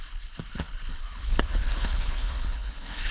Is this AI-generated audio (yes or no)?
yes